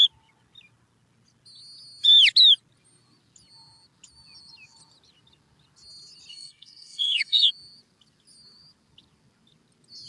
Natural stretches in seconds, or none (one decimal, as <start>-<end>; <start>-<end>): 0.0-6.3; 7.5-10.1